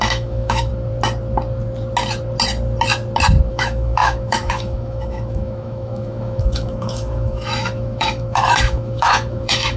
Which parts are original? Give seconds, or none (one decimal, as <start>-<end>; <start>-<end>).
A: 0.7-3.5